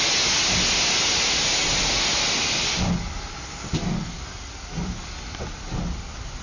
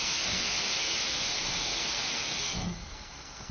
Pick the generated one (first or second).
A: second